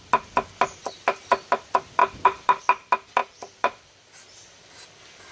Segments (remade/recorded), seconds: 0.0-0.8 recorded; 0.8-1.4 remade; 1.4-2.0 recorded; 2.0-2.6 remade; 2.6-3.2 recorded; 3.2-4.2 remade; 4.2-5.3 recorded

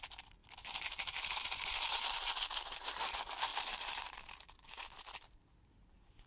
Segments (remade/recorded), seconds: 0.0-3.5 recorded; 3.5-5.4 remade; 5.4-6.3 recorded

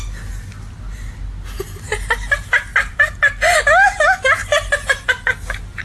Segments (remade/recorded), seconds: 0.0-2.7 recorded; 2.7-3.6 remade; 3.6-4.4 recorded; 4.4-5.2 remade; 5.2-5.8 recorded

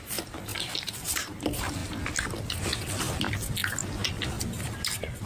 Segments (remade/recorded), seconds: 0.0-1.8 remade; 1.8-4.6 recorded; 4.6-5.3 remade

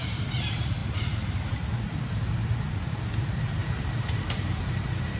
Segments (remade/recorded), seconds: 0.0-5.2 remade

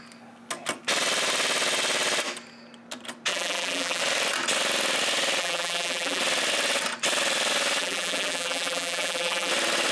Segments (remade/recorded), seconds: 0.0-3.3 recorded; 3.3-4.0 remade; 4.0-5.4 recorded; 5.4-6.2 remade; 6.2-7.8 recorded; 7.8-9.5 remade; 9.5-9.9 recorded

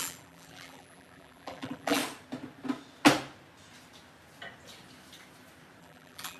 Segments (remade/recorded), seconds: 0.0-2.0 remade; 2.0-5.8 recorded; 5.8-6.4 remade